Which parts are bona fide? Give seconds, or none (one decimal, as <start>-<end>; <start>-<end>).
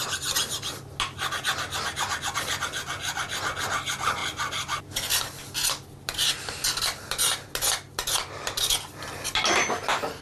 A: 0.0-10.2